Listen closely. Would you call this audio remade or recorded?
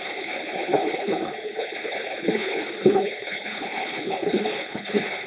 remade